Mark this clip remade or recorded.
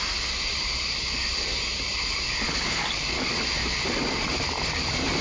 remade